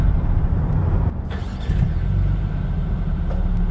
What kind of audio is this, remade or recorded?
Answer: recorded